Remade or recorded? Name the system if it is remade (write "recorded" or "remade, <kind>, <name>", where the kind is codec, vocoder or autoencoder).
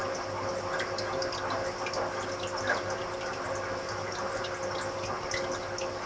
recorded